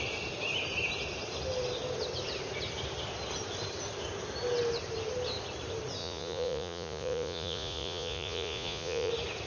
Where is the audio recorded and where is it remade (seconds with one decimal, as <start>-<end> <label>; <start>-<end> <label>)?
0.0-6.0 recorded; 6.0-9.1 remade; 9.1-9.5 recorded